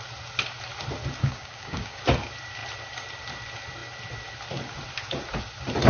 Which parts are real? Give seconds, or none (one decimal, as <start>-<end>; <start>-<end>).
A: 0.0-1.2; 2.0-5.9